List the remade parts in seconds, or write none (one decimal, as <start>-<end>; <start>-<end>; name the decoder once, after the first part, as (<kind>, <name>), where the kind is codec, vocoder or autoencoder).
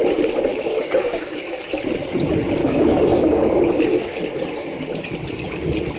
0.5-1.6 (codec, DAC); 2.6-3.6